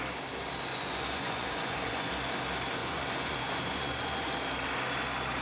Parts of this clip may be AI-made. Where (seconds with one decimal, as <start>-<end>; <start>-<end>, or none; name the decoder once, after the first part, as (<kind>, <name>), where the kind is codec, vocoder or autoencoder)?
0.7-2.1 (vocoder, Vocos); 2.8-4.3